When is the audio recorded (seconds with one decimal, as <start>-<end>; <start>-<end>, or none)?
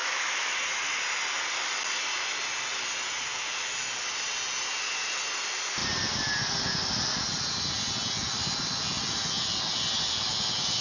0.6-10.8